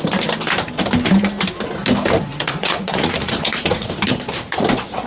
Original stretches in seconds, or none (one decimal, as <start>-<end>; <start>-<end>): 0.0-2.3; 3.9-5.1